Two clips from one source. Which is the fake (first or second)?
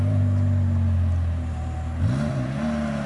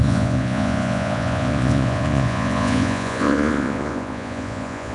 second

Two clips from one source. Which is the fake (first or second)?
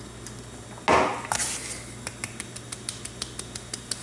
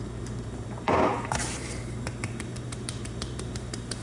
second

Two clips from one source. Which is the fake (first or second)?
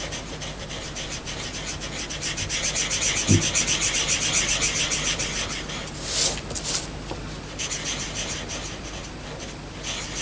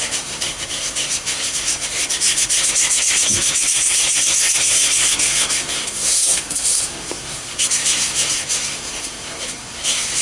second